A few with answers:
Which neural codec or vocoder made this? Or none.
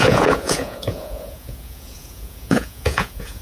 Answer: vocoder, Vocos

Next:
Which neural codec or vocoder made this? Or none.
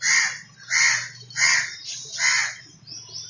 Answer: none